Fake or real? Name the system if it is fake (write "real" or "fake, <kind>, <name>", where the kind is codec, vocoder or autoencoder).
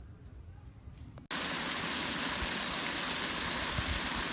real